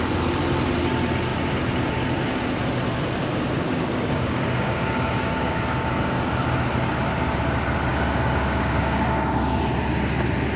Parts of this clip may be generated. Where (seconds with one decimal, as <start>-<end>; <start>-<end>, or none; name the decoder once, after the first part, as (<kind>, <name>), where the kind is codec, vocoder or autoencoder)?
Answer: 3.3-6.4 (codec, DAC); 7.9-9.7